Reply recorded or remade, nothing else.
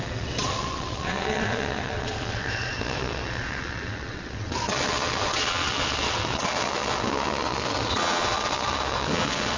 remade